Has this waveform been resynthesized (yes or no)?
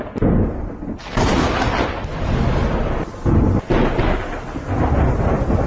no